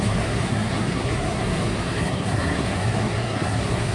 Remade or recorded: remade